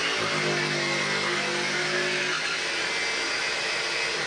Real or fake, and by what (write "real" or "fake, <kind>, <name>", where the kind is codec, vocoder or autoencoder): real